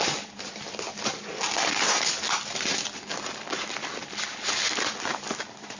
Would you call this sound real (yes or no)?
yes